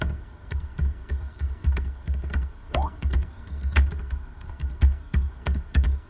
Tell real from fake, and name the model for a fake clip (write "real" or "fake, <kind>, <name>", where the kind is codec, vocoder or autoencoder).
fake, codec, SNAC